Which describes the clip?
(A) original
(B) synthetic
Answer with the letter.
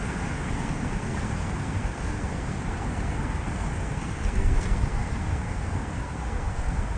B